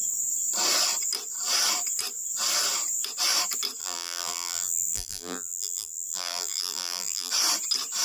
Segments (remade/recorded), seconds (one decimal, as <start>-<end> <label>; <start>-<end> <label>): 0.0-3.8 recorded; 3.8-7.3 remade; 7.3-8.0 recorded